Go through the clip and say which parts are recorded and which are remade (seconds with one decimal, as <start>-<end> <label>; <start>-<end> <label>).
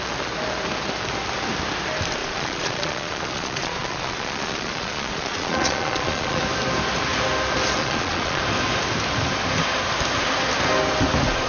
0.0-2.2 recorded; 2.2-6.4 remade; 6.4-7.8 recorded; 7.8-8.4 remade; 8.4-11.5 recorded